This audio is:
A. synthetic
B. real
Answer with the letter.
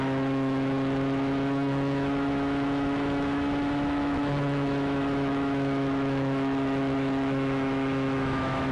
A